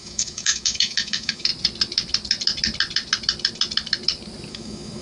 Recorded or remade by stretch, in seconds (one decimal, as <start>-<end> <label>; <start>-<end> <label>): 0.0-1.5 remade; 1.5-4.5 recorded; 4.5-5.0 remade